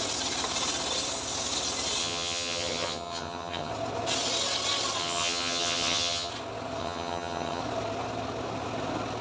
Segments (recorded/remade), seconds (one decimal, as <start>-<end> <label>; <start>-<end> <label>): 0.0-2.0 recorded; 2.0-3.7 remade; 3.7-5.0 recorded; 5.0-6.3 remade; 6.3-6.8 recorded; 6.8-7.6 remade; 7.6-9.2 recorded